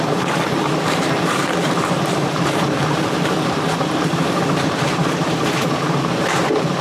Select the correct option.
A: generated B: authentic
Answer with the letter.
A